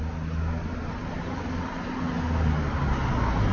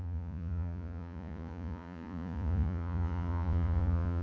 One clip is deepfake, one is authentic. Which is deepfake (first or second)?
second